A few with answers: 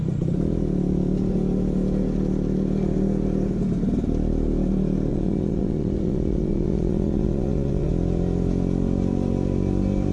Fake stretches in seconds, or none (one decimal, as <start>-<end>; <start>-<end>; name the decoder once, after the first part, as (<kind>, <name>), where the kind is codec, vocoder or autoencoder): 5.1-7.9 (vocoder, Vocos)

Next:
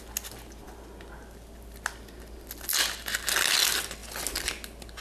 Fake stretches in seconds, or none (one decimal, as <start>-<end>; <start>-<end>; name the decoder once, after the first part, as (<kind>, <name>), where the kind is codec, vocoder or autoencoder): none

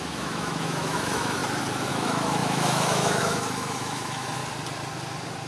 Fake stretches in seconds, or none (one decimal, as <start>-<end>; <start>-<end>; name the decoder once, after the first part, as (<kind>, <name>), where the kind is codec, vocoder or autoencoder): 0.0-1.4 (autoencoder, DAC-VAE); 1.9-4.4

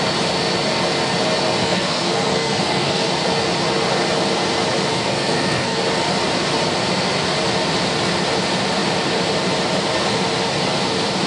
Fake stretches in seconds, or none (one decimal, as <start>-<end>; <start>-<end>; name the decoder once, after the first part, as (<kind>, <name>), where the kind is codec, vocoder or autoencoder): 1.6-3.1 (codec, SNAC); 4.9-5.8

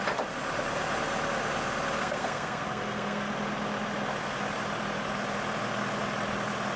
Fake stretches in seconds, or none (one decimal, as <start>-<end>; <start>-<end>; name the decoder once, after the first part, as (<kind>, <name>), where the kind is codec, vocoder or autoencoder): 2.0-3.3 (codec, SNAC)

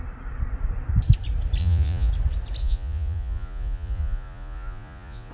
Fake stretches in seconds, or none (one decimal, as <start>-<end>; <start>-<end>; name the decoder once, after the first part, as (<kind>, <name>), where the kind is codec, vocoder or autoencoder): 1.6-2.1 (vocoder, Vocos); 2.6-5.3

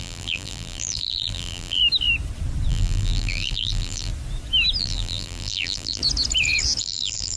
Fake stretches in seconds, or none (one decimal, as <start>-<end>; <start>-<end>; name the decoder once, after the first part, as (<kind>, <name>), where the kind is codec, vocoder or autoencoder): 0.0-1.8 (vocoder, BigVGAN v2); 2.7-4.1; 4.8-6.0; 6.8-7.4

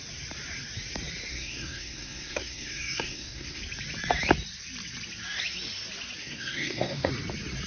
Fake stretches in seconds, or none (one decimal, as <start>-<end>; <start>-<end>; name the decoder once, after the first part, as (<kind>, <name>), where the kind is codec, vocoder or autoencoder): 1.3-3.6 (codec, SNAC); 6.2-7.1